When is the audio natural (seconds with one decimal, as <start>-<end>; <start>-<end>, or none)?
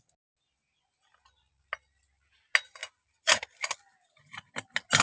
0.0-5.0